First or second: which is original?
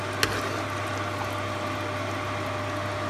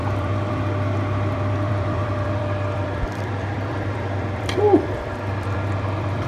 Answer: first